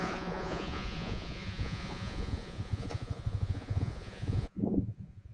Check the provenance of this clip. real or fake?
fake